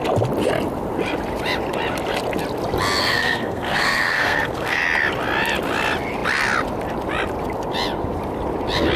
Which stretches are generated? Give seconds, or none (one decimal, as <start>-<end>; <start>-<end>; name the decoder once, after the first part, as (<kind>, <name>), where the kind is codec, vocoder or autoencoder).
3.0-4.8 (codec, SNAC)